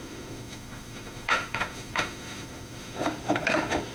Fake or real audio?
fake